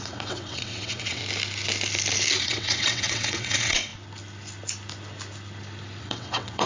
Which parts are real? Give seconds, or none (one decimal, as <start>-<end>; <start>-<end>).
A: 1.2-2.4; 3.9-6.0

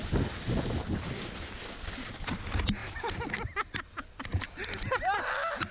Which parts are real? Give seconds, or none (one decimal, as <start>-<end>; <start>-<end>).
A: 0.0-5.7

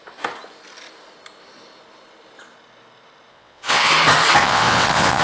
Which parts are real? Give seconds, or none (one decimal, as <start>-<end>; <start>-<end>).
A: 0.0-3.3; 3.9-4.4

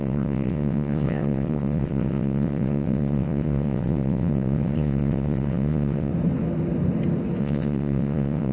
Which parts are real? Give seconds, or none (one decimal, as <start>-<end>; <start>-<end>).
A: 6.1-7.4

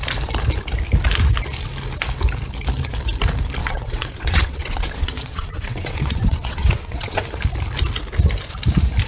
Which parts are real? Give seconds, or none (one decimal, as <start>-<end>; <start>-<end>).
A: 0.0-3.6; 7.2-9.1

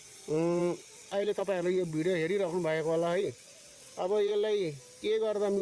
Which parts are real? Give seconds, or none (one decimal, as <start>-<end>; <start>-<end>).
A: 1.9-3.3; 4.3-5.6

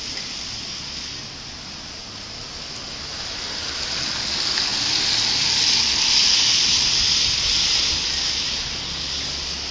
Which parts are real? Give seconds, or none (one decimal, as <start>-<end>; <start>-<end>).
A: 0.0-9.7